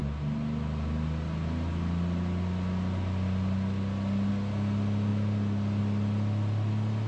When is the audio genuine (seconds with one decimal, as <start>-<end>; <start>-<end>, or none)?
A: 0.0-7.1

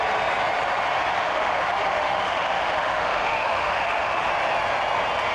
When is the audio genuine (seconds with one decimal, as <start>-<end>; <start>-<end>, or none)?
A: 0.0-1.1; 4.3-5.3

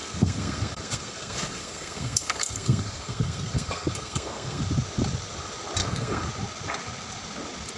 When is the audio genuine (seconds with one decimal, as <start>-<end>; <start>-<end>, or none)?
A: 4.6-5.8; 6.3-7.8

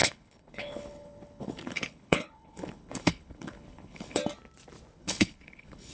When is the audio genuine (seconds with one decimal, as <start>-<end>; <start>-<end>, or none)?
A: 4.2-5.0

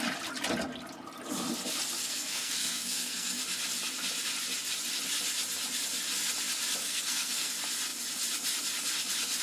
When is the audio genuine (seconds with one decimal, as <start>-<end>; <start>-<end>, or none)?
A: 0.0-2.0; 3.4-6.8; 7.5-9.4